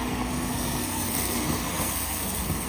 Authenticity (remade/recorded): remade